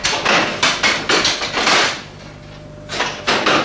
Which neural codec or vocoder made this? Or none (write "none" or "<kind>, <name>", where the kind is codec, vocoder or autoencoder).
none